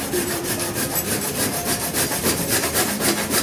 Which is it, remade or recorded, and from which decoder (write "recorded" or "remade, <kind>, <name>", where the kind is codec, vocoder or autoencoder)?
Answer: remade, vocoder, BigVGAN v2